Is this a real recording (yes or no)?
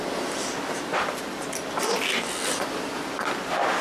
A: yes